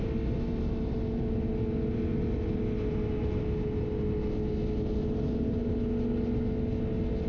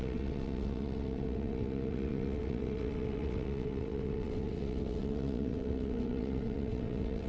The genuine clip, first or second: first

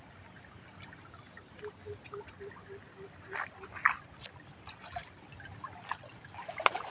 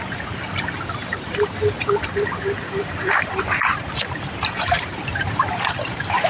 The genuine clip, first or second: first